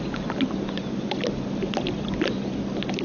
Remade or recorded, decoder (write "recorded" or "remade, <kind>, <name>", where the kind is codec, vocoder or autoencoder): recorded